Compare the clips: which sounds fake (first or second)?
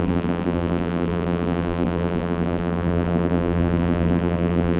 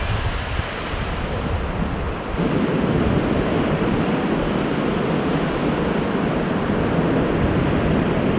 first